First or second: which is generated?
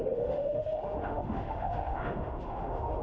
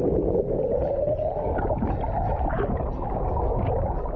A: first